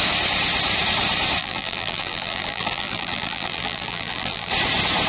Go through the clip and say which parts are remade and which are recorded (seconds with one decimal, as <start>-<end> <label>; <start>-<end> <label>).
0.0-1.4 recorded; 1.4-4.5 remade; 4.5-5.1 recorded